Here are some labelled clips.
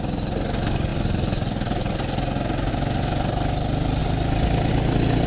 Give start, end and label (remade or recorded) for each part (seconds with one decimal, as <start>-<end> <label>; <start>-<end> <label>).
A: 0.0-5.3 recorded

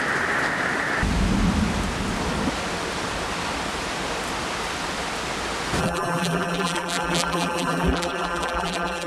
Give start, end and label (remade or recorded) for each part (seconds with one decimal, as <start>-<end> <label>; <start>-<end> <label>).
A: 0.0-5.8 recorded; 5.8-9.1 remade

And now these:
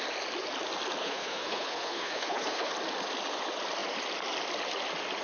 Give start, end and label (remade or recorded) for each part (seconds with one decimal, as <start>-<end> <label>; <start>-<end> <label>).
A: 0.0-1.0 recorded; 1.0-2.7 remade; 2.7-5.2 recorded